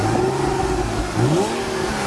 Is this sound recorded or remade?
recorded